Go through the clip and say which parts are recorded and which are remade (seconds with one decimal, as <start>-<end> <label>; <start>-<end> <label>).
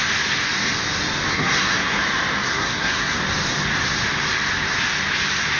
0.0-1.3 recorded; 1.3-2.0 remade; 2.0-2.5 recorded; 2.5-3.2 remade; 3.2-5.6 recorded